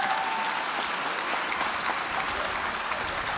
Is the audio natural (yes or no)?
yes